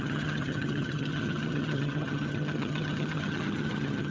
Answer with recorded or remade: remade